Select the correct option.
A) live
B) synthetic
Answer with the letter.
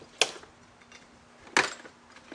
A